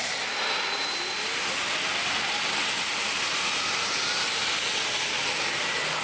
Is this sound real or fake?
real